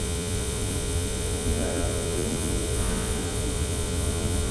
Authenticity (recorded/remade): remade